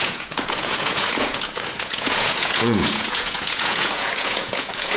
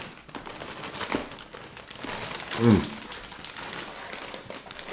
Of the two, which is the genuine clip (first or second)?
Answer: second